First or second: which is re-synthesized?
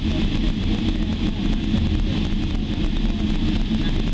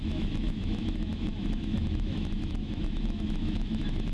second